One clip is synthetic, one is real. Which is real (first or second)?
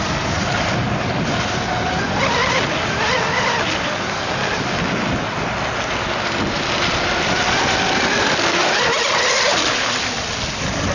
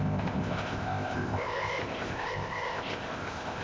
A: first